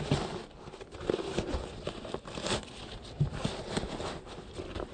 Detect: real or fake real